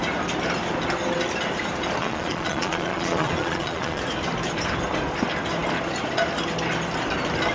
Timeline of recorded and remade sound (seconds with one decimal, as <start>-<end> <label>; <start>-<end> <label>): 0.0-2.0 recorded; 2.0-4.0 remade; 4.0-7.5 recorded